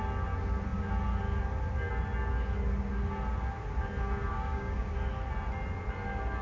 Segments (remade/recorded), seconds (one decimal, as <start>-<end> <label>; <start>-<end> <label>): 0.0-4.3 recorded; 4.3-4.9 remade; 4.9-6.4 recorded